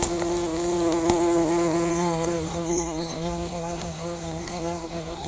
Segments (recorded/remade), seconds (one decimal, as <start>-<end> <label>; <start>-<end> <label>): 0.0-1.9 recorded; 1.9-5.3 remade